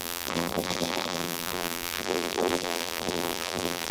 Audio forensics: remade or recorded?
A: remade